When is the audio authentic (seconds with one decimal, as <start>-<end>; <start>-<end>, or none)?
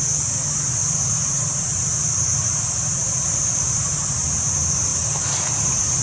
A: 0.0-0.8; 4.4-4.9